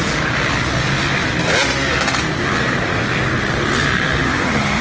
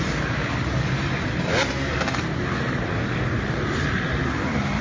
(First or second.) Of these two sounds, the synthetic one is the second